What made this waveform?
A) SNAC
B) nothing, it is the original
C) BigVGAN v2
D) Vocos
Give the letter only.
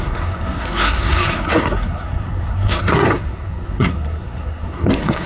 A